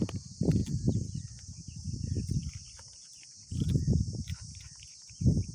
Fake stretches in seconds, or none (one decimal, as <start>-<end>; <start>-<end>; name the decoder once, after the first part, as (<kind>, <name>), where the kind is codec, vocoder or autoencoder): none